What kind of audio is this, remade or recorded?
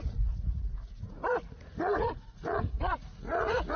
remade